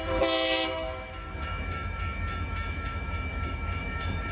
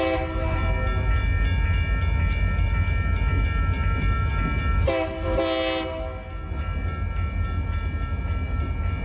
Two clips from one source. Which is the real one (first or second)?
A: second